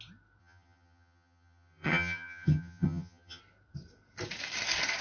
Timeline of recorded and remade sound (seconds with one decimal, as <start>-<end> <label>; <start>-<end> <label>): 0.0-0.4 recorded; 0.4-3.4 remade; 3.4-5.0 recorded